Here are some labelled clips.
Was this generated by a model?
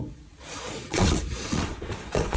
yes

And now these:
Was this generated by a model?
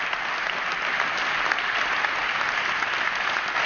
no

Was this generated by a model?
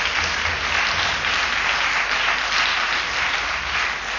no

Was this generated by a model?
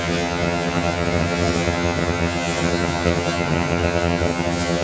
yes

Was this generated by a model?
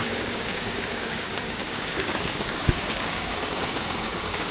yes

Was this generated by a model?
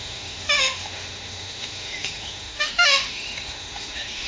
yes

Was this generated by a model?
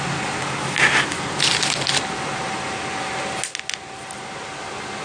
no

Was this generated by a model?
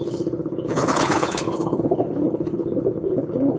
yes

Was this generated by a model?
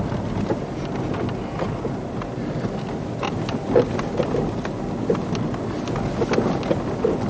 no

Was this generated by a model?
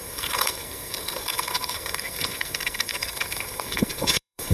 yes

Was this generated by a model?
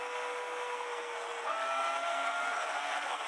yes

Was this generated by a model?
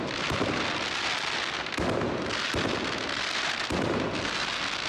no